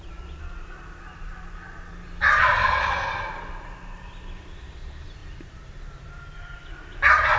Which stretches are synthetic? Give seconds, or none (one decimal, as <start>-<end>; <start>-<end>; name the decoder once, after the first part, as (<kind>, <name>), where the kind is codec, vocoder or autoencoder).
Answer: none